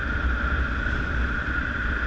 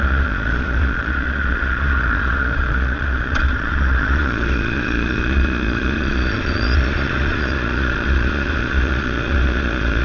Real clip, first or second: first